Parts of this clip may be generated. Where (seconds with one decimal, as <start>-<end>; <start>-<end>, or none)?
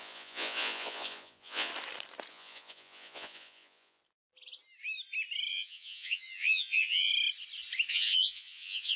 0.0-1.7; 2.3-4.0; 5.5-7.1; 7.9-9.0